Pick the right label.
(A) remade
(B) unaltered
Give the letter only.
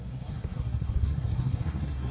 A